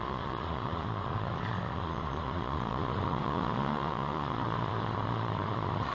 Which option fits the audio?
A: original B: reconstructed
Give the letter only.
B